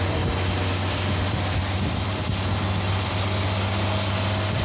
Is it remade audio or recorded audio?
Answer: remade